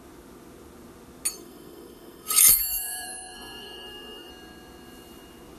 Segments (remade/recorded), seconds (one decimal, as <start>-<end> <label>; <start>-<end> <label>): 0.0-1.3 recorded; 1.3-4.3 remade; 4.3-5.6 recorded